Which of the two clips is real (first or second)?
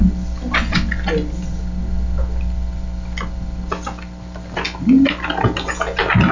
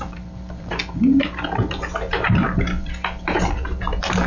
first